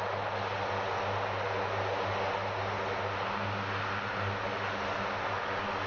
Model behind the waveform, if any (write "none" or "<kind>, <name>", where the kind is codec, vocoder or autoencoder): none